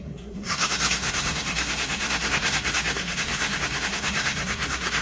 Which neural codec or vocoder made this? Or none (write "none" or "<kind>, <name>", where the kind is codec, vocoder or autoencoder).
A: codec, SNAC